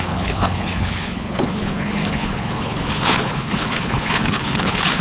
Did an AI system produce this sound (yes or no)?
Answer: yes